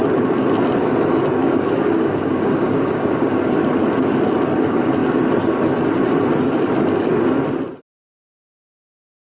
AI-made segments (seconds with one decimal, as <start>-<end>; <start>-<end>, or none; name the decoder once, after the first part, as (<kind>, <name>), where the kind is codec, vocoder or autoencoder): 1.4-3.6 (codec, DAC)